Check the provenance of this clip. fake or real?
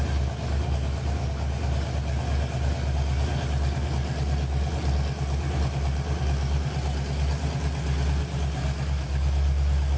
real